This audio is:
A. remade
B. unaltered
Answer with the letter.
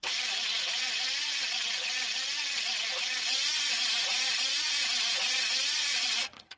A